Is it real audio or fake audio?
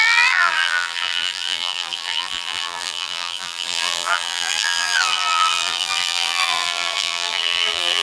fake